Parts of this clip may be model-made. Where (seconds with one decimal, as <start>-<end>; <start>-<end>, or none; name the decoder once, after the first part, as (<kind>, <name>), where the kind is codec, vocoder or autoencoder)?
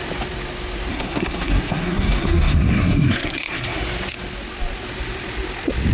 0.9-3.8 (codec, SNAC)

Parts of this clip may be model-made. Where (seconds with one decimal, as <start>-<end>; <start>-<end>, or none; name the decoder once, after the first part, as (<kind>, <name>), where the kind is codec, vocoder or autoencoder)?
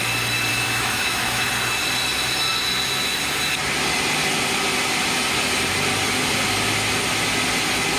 0.5-1.5 (autoencoder, DAC-VAE)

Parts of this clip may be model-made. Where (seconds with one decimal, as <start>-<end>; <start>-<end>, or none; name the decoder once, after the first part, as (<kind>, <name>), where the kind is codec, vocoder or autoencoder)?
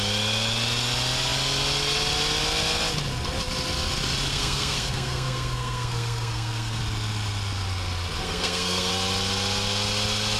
4.3-6.8 (codec, SNAC); 8.2-8.9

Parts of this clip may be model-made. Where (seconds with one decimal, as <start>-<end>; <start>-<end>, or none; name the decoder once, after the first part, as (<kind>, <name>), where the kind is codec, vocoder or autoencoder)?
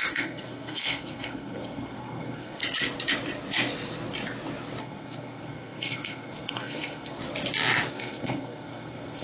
0.0-2.6 (codec, SNAC); 4.8-7.2; 7.9-9.2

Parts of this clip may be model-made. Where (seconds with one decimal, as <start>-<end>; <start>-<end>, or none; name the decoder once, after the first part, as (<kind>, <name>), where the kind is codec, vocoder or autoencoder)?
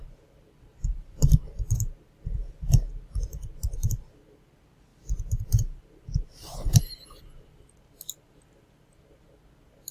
0.7-1.9 (vocoder, BigVGAN v2); 4.9-7.2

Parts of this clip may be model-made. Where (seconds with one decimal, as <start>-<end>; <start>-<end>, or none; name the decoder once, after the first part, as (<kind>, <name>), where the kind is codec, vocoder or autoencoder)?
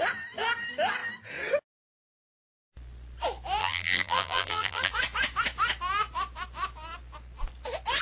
3.6-4.9 (vocoder, BigVGAN v2)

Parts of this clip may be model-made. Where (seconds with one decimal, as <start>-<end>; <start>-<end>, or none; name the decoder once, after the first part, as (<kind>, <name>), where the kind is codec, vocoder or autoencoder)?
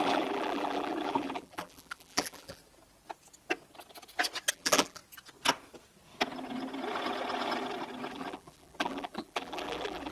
0.0-2.6 (vocoder, BigVGAN v2); 4.5-5.0; 8.1-10.1